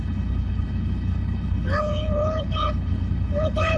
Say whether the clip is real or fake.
fake